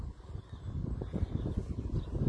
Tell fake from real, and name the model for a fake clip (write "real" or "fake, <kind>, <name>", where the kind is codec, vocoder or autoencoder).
real